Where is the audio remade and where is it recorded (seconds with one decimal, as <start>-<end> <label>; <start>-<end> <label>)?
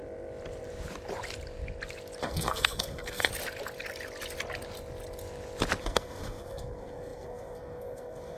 0.0-2.2 recorded; 2.2-3.3 remade; 3.3-5.8 recorded; 5.8-8.4 remade